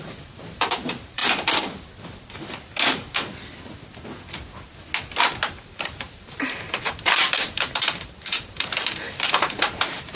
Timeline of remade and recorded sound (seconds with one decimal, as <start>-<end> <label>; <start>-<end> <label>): 0.0-1.2 remade; 1.2-5.4 recorded; 5.4-10.2 remade